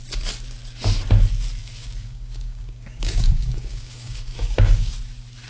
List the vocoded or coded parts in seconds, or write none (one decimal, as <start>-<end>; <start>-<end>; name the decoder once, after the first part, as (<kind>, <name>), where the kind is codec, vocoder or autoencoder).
1.6-4.9 (codec, DAC)